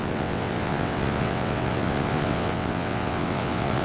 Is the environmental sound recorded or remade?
remade